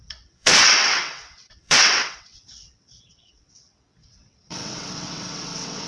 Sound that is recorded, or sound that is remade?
remade